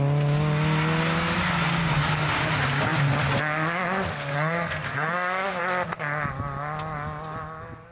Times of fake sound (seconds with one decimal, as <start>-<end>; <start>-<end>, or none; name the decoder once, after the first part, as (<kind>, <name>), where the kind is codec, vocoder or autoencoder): 4.3-5.6 (codec, SNAC)